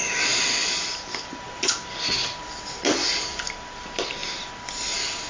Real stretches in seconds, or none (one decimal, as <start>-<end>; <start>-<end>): 0.0-5.3